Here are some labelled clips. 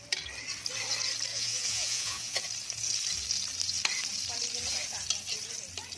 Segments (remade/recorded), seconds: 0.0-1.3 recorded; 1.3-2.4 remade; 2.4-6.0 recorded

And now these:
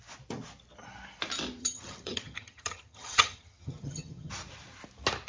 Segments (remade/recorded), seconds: 0.0-1.6 recorded; 1.6-4.3 remade; 4.3-5.3 recorded

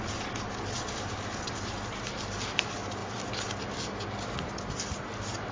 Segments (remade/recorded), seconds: 0.0-5.5 recorded

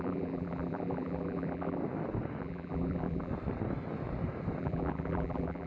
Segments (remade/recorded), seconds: 0.0-1.8 remade; 1.8-2.4 recorded; 2.4-3.3 remade; 3.3-4.6 recorded; 4.6-5.7 remade